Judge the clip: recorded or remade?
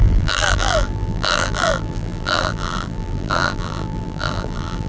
remade